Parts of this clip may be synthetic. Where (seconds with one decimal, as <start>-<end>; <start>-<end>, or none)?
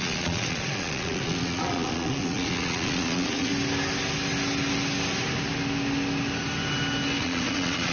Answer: 0.0-3.5; 7.2-7.9